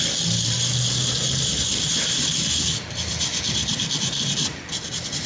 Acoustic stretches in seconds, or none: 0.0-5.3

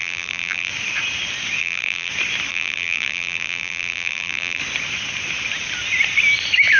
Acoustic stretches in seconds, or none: 0.7-1.6; 2.1-2.5; 4.6-6.8

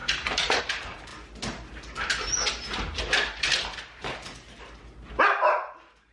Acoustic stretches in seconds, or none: 0.6-6.1

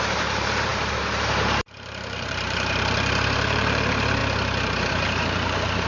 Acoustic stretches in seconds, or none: 4.2-4.9

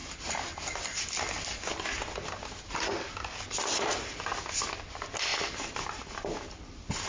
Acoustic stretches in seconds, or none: 0.0-2.7

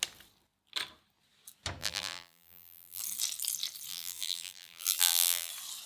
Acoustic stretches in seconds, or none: 0.0-1.8; 3.0-3.9; 5.5-5.9